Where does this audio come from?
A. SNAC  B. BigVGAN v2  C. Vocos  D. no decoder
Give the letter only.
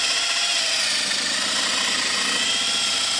D